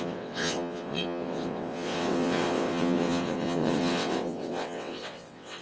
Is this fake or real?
fake